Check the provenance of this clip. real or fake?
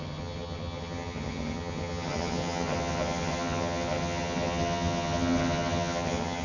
fake